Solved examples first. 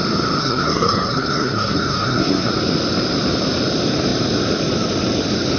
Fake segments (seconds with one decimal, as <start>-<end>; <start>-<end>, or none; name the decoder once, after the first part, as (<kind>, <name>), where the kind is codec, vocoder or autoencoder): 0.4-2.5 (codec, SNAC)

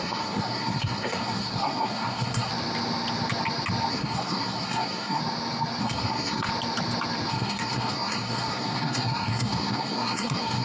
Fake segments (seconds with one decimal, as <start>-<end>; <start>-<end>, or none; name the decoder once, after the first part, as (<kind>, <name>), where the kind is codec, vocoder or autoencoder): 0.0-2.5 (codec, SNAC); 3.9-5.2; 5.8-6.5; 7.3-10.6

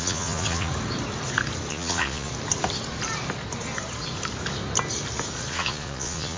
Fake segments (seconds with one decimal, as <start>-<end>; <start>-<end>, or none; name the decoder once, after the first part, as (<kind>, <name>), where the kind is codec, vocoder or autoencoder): 0.0-0.7 (vocoder, Vocos); 1.7-2.3; 5.5-6.4